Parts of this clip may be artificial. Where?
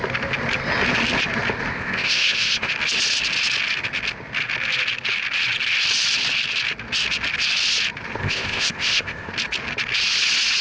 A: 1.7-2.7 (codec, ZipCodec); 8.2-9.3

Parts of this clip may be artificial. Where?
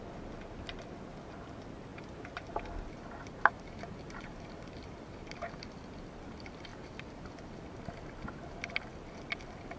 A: 1.9-5.1 (vocoder, BigVGAN v2); 6.7-7.7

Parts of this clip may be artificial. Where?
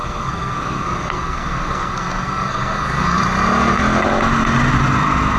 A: 0.0-3.2 (codec, SNAC)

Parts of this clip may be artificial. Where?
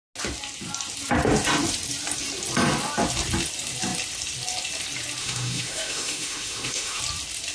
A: 5.2-7.0 (autoencoder, DAC-VAE)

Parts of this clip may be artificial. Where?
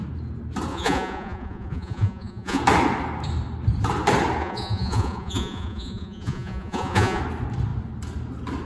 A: 0.7-2.6 (vocoder, Vocos); 4.4-7.2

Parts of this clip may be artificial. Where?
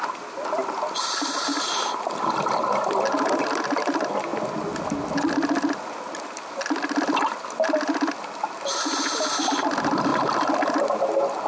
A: none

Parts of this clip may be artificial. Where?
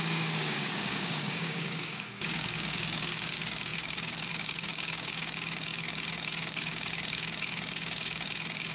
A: 0.0-8.7 (codec, DAC)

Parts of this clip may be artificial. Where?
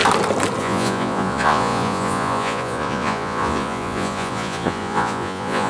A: 0.6-5.7 (vocoder, Vocos)